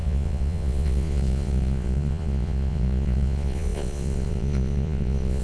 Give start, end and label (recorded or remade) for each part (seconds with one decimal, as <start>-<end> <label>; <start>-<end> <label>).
0.0-5.4 remade